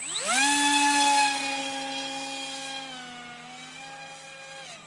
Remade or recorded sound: recorded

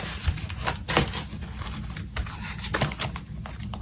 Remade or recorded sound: recorded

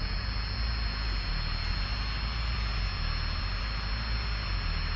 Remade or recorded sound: recorded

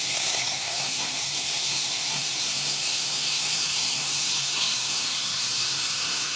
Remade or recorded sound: remade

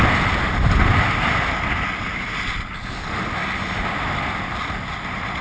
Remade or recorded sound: recorded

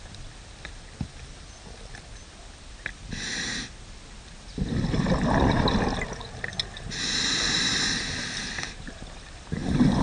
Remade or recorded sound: recorded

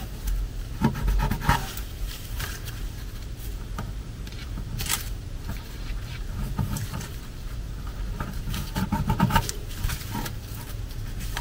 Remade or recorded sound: remade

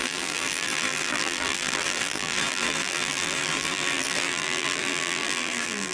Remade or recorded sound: remade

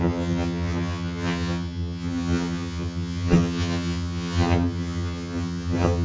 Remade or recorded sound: remade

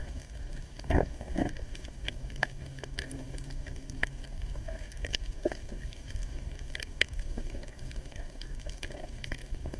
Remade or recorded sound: remade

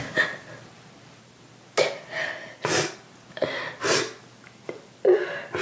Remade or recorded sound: recorded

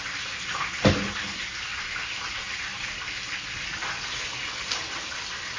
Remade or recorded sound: recorded